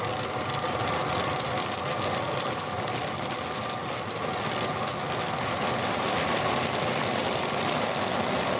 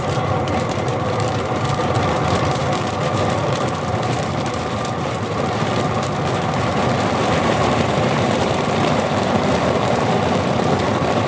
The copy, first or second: second